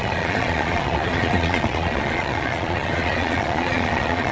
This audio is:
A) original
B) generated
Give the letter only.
B